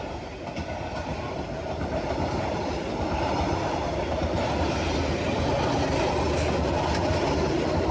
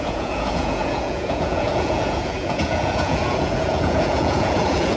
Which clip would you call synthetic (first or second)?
second